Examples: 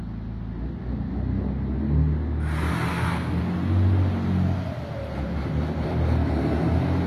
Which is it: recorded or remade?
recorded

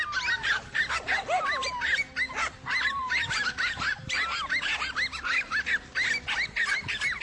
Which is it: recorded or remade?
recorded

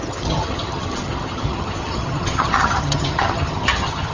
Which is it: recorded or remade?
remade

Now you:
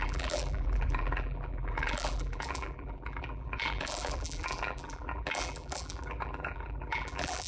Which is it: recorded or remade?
remade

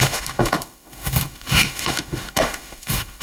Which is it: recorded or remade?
remade